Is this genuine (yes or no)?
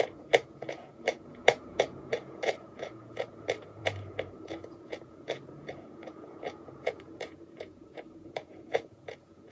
no